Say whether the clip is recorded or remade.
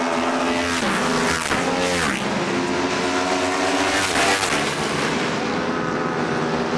recorded